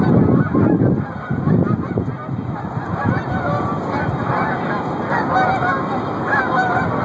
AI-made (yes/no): no